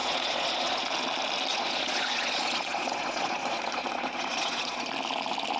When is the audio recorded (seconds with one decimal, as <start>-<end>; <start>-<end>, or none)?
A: 0.8-1.5; 4.9-5.6